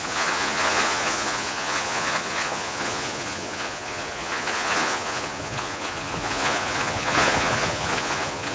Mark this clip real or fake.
fake